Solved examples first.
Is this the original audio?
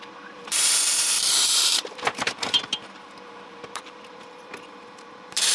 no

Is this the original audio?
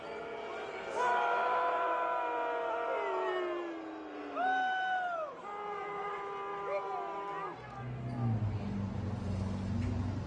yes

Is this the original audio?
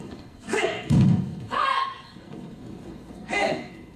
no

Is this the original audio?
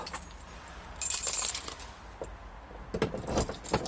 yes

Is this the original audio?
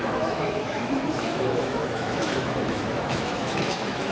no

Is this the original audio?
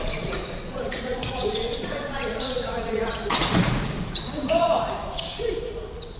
no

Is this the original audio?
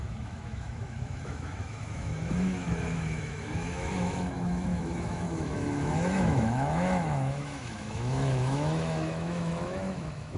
no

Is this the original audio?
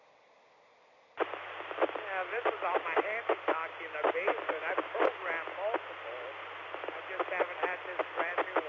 no